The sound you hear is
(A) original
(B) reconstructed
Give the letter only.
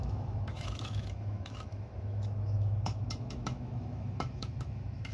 B